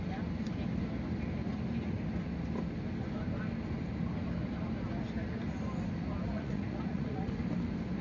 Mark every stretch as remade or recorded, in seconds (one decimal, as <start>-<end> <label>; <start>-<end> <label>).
0.0-6.3 recorded; 6.3-7.2 remade; 7.2-8.0 recorded